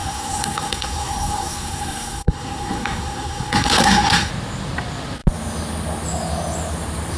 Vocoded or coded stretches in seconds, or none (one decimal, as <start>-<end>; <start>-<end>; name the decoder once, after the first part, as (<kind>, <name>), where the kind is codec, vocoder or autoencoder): 0.0-4.3 (codec, SNAC)